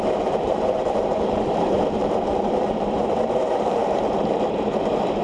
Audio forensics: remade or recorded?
remade